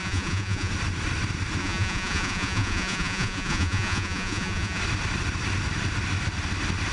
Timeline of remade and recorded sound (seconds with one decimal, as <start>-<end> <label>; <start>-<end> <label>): 0.0-0.7 remade; 0.7-1.6 recorded; 1.6-4.8 remade; 4.8-6.9 recorded